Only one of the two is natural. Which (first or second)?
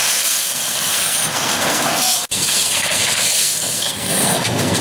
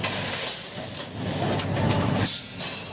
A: second